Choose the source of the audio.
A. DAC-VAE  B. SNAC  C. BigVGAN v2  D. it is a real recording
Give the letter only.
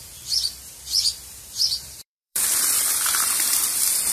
C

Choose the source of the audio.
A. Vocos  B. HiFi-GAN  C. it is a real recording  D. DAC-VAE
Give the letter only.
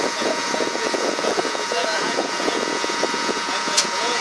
A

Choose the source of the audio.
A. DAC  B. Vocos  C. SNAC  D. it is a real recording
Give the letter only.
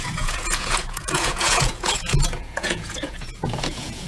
B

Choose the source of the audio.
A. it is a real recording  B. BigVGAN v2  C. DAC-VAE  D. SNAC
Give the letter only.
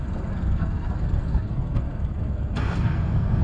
D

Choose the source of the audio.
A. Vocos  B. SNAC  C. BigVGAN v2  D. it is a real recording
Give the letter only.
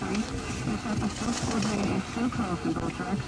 D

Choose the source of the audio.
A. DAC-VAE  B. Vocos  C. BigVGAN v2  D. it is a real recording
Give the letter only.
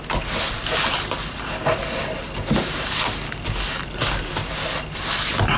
D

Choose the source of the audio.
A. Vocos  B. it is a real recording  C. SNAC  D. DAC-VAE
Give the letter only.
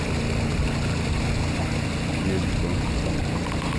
B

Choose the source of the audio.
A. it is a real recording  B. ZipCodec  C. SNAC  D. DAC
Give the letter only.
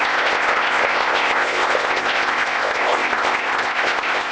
B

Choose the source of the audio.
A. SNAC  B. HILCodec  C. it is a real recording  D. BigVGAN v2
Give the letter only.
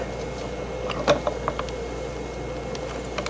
C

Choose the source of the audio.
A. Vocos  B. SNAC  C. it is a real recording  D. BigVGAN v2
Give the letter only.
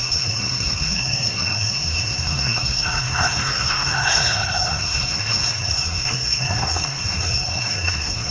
B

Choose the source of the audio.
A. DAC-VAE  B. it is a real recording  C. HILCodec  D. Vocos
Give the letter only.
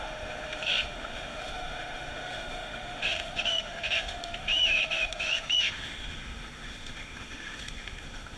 A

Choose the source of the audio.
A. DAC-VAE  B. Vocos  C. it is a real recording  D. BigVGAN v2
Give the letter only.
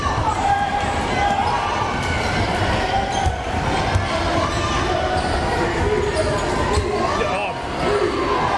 C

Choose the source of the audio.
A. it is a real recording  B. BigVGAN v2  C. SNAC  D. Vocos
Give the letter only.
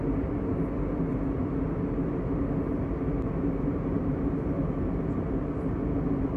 A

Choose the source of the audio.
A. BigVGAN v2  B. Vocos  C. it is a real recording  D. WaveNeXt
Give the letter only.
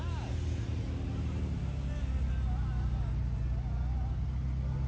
C